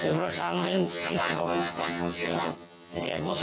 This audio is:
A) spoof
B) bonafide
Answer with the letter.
A